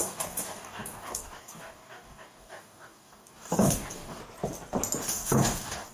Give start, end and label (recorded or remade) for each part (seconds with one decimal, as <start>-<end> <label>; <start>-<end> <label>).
0.0-4.2 remade; 4.2-5.1 recorded; 5.1-5.9 remade